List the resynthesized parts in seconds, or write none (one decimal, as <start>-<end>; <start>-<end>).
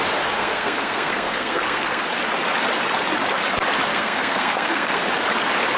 0.4-2.0; 3.9-5.0